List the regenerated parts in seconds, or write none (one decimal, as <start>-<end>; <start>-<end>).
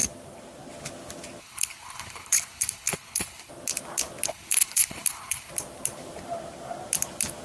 1.4-3.5; 4.3-5.5